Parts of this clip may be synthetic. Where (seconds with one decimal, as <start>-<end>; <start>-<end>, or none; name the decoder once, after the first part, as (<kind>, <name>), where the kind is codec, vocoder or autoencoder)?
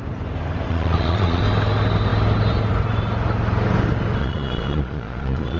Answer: 0.7-1.4 (vocoder, Vocos); 4.2-5.6